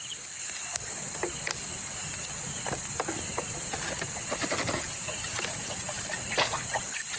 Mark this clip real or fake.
real